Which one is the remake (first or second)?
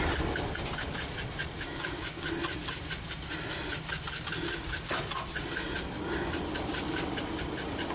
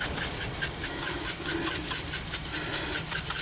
second